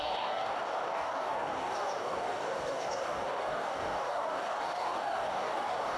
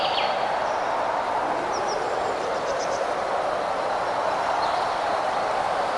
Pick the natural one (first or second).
second